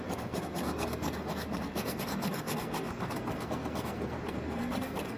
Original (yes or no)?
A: no